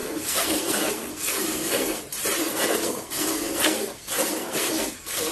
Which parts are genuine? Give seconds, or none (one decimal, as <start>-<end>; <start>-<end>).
2.0-2.4